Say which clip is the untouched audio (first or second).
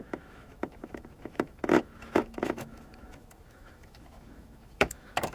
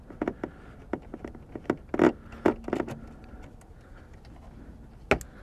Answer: second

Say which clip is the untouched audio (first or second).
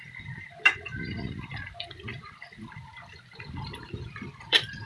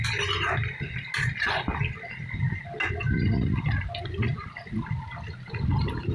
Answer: second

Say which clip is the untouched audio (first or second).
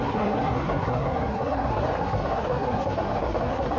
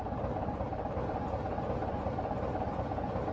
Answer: second